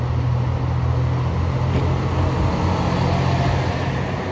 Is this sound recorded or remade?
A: recorded